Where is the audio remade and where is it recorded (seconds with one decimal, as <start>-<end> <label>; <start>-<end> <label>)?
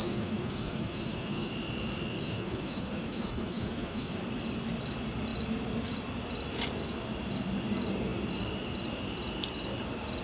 0.0-1.5 remade; 1.5-2.2 recorded; 2.2-4.2 remade; 4.2-10.2 recorded